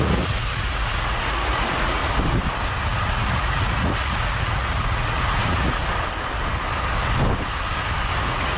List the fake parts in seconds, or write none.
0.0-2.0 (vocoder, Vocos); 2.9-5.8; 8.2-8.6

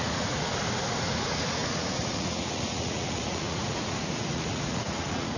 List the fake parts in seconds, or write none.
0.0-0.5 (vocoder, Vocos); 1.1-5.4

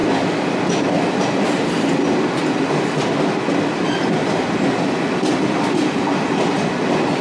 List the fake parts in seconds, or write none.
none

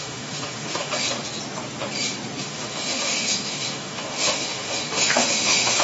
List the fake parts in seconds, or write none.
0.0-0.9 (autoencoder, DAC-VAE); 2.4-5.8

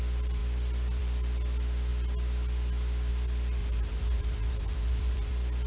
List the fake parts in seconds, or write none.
3.6-5.3 (vocoder, BigVGAN v2)

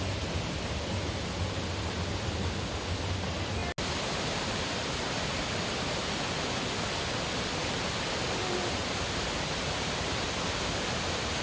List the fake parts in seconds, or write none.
none

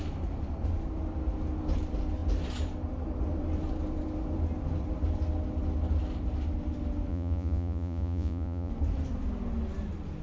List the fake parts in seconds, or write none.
7.1-8.7 (vocoder, Vocos)

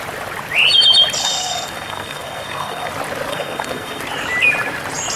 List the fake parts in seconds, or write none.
1.2-2.9 (codec, SNAC); 3.3-4.0